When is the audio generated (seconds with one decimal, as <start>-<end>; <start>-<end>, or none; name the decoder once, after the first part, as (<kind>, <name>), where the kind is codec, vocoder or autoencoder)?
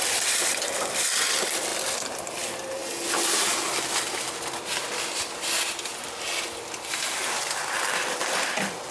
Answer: 0.0-0.5 (vocoder, BigVGAN v2); 1.2-1.7; 2.3-2.8; 7.7-8.9